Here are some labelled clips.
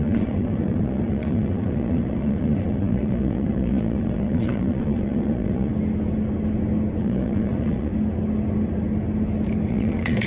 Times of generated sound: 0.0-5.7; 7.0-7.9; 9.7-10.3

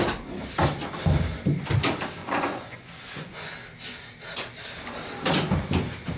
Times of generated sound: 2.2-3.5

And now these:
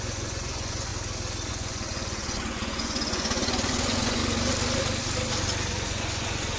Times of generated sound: 0.0-0.9; 1.5-4.2; 5.7-6.6

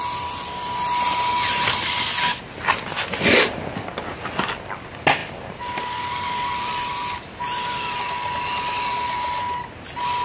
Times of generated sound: none